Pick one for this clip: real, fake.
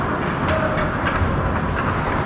real